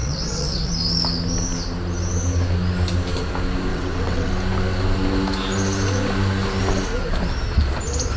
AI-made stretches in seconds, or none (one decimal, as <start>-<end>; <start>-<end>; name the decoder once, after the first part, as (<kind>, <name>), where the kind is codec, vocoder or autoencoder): 0.0-0.7 (vocoder, WaveNeXt); 3.7-4.3